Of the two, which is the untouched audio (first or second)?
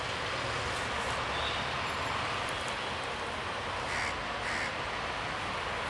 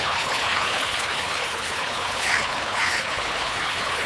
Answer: first